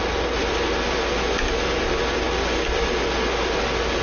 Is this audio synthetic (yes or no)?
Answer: no